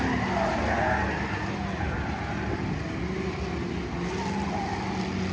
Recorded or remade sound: recorded